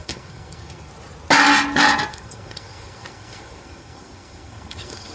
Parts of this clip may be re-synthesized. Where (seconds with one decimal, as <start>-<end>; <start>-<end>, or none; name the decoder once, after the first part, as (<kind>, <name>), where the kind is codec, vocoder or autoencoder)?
0.0-0.9 (codec, SNAC); 2.1-5.1